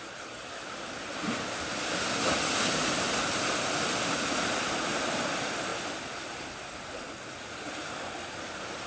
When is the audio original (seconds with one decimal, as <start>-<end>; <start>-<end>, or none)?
0.0-8.9